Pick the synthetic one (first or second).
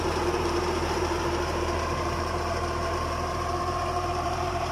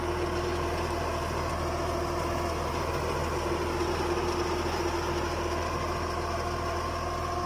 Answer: first